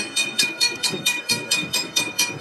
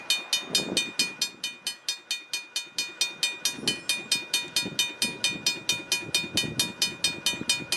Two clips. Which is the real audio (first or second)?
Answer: second